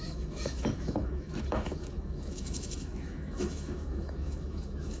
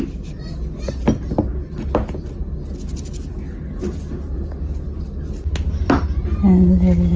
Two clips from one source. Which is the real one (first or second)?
second